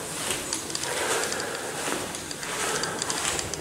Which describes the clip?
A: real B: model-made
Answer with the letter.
A